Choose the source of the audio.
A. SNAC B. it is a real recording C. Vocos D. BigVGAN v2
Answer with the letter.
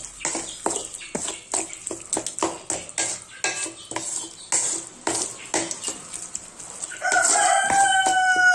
B